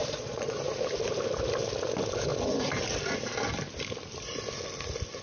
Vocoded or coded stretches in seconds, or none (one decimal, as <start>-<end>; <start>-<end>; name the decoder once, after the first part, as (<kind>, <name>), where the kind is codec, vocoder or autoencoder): 0.0-0.6 (vocoder, Vocos)